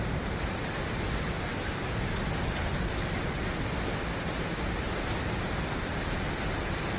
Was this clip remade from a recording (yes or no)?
no